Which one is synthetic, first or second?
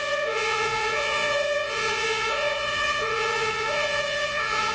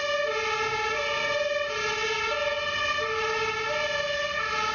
first